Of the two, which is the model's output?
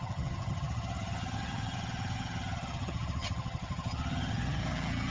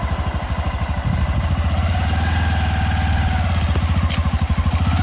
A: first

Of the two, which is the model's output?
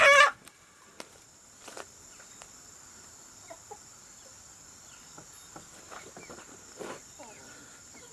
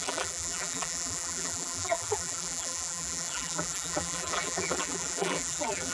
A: second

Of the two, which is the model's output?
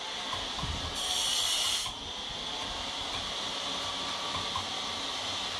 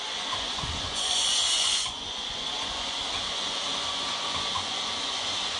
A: second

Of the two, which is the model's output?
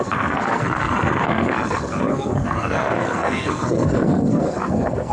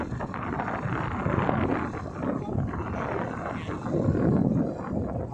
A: first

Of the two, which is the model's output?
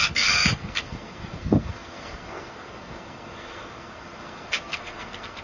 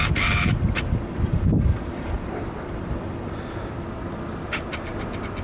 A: first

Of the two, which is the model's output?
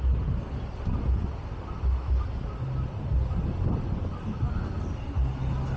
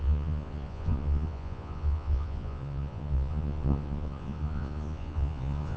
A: second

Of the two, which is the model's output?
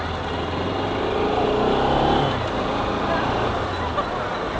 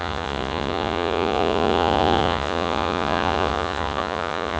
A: second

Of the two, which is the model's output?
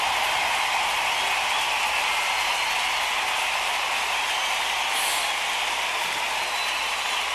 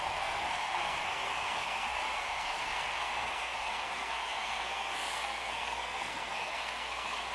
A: second